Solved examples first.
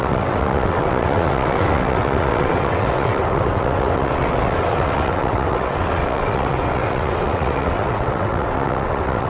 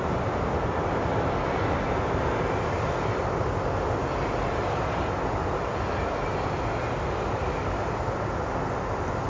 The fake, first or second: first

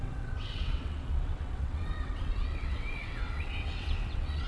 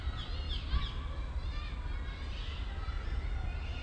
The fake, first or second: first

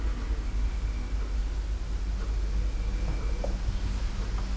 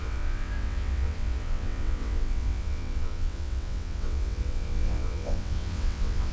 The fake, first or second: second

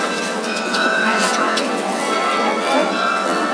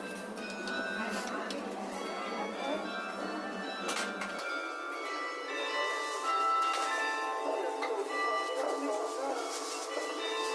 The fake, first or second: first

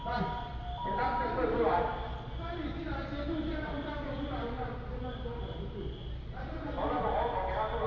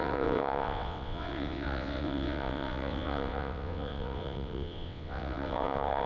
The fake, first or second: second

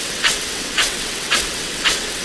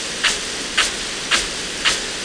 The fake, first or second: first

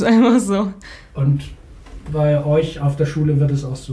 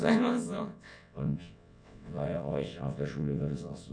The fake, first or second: second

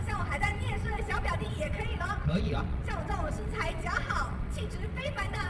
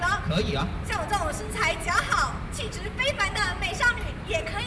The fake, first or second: first